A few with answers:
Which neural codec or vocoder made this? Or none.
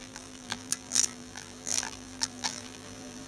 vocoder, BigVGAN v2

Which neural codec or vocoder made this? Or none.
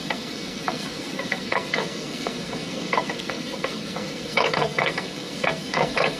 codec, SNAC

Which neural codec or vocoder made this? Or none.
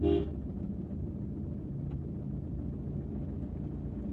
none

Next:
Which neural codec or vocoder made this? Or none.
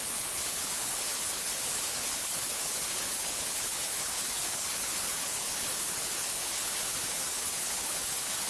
codec, HILCodec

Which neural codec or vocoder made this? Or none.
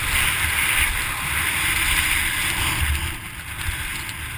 none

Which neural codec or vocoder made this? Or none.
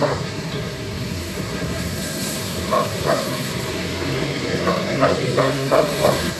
codec, SNAC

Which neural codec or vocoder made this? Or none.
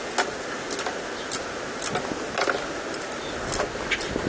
none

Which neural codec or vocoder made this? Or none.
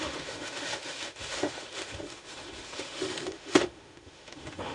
autoencoder, DAC-VAE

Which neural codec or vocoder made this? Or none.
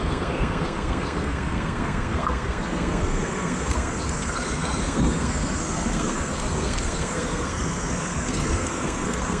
codec, SNAC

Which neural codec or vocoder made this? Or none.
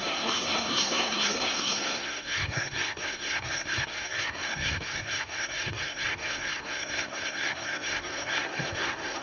codec, SNAC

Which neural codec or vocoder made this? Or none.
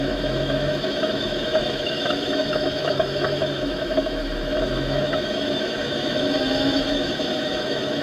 autoencoder, DAC-VAE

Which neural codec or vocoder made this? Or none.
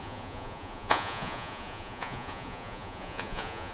vocoder, Vocos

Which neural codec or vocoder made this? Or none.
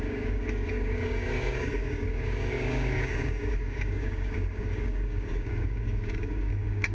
codec, DAC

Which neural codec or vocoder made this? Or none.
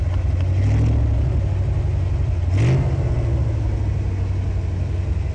none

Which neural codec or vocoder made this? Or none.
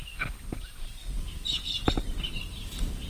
none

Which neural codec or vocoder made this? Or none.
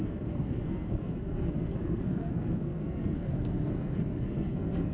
codec, SNAC